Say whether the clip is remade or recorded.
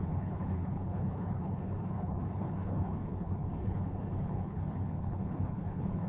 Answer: remade